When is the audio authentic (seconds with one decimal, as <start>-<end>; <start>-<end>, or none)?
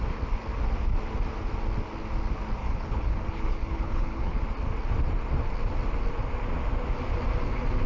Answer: 0.0-2.6; 4.4-7.9